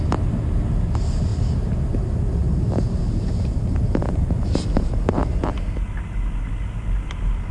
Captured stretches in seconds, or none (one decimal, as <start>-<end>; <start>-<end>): 0.0-2.4; 5.3-7.5